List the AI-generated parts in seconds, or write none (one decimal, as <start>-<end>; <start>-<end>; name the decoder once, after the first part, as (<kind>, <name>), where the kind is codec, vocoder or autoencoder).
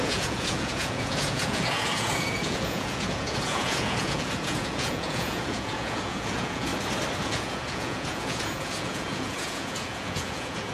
0.0-6.7 (vocoder, Vocos); 7.2-10.7